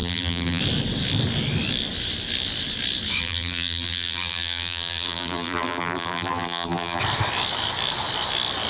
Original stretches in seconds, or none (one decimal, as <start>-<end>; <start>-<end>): 0.6-3.2; 7.0-8.7

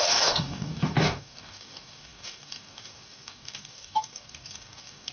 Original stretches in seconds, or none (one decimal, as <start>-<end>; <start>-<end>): none

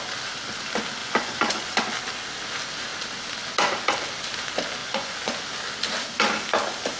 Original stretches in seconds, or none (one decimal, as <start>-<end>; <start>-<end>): 0.0-1.0; 1.8-4.8; 5.4-7.0